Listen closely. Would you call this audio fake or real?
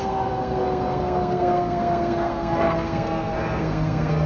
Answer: fake